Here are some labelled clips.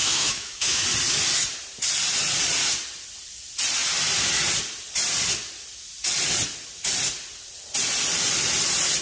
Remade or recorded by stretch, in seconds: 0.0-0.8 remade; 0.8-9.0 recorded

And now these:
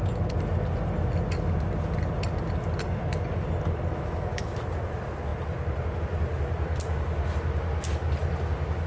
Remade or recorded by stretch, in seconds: 0.0-3.9 recorded; 3.9-4.6 remade; 4.6-8.9 recorded

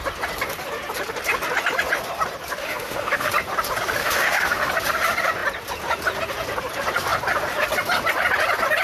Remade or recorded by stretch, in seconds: 0.0-2.6 recorded; 2.6-3.3 remade; 3.3-4.0 recorded; 4.0-4.7 remade; 4.7-8.8 recorded